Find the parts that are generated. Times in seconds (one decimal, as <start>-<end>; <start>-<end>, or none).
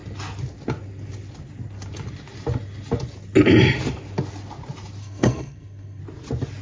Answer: 5.0-6.0